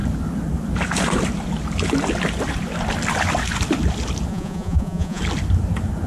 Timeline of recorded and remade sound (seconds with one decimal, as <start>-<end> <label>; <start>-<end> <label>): 0.0-4.3 recorded; 4.3-5.2 remade; 5.2-6.1 recorded